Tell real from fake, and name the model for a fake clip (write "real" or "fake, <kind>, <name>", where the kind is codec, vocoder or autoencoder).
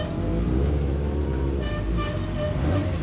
real